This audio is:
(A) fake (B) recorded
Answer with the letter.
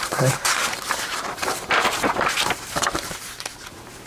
A